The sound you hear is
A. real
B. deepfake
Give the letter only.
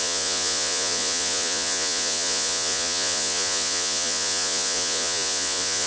B